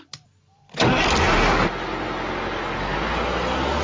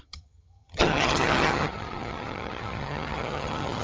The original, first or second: first